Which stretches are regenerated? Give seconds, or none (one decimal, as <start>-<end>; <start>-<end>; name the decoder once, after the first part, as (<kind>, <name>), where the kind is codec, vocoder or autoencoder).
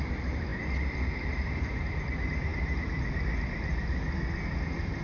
none